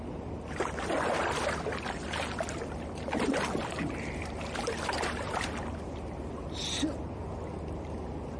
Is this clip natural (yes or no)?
yes